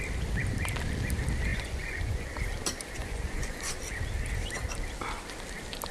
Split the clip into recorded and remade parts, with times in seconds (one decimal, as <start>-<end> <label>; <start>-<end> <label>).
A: 0.0-1.5 recorded; 1.5-2.3 remade; 2.3-3.0 recorded; 3.0-3.7 remade; 3.7-5.9 recorded